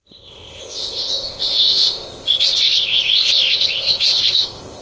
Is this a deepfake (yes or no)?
yes